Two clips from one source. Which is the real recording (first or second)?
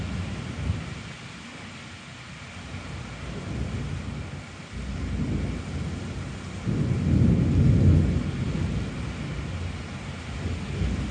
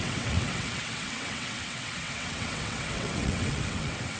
first